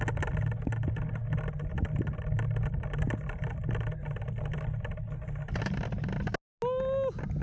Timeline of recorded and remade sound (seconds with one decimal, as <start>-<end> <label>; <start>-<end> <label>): 0.0-7.4 recorded